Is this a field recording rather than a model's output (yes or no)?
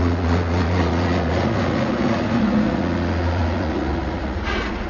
no